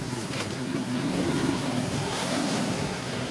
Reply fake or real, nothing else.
fake